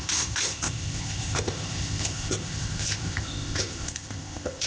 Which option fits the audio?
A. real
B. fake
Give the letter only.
B